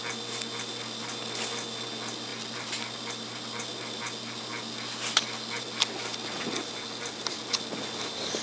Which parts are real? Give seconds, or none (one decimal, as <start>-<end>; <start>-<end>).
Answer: 0.0-2.3; 4.0-8.4

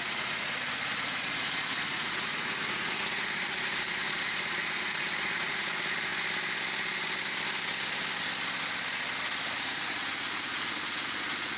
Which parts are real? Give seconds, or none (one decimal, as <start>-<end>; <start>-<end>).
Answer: 6.1-9.2

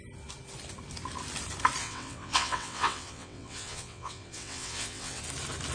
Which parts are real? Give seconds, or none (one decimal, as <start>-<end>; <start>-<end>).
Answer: 0.0-1.8; 5.2-5.7